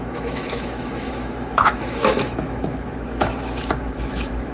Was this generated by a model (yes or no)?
yes